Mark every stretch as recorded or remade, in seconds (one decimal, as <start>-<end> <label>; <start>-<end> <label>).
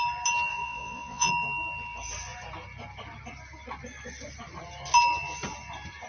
0.0-0.5 recorded; 0.5-1.3 remade; 1.3-6.1 recorded